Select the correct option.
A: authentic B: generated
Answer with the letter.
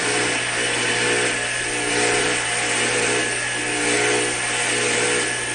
A